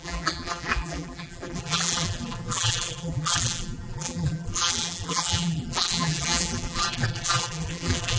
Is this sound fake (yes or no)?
yes